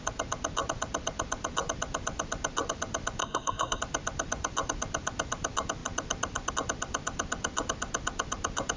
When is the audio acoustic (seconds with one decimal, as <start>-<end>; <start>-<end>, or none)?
0.0-3.2; 3.8-8.8